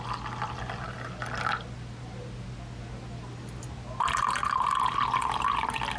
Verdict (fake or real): real